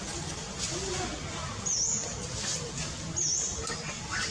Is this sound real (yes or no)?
yes